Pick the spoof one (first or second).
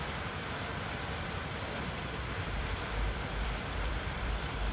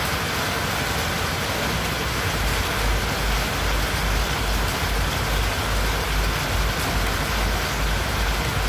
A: first